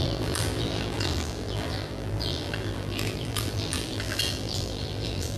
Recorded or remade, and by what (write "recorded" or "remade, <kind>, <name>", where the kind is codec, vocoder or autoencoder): remade, vocoder, BigVGAN v2